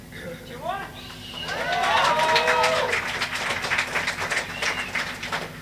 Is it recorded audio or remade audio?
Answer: recorded